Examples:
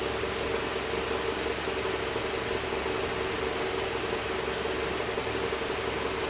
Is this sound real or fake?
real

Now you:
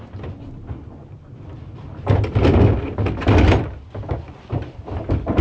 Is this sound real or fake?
real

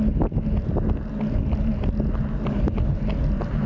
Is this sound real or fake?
real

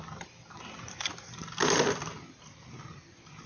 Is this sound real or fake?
real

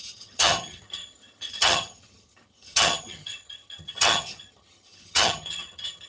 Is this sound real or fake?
fake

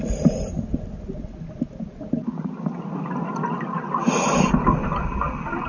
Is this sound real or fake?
real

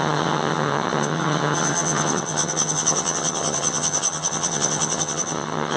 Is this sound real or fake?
fake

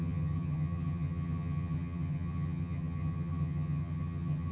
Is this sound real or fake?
fake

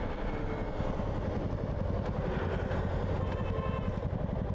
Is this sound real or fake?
real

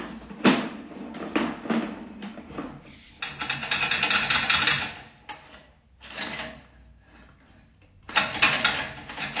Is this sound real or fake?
real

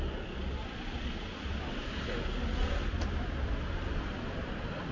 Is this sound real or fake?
real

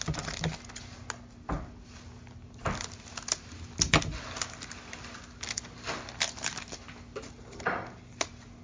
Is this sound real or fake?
real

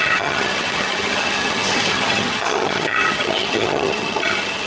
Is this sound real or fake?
fake